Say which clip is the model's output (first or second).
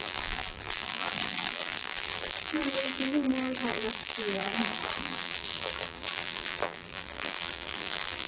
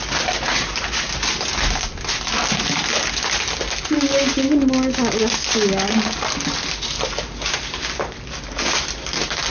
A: first